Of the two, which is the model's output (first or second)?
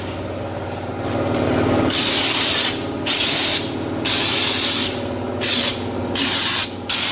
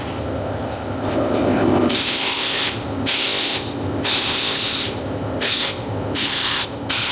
second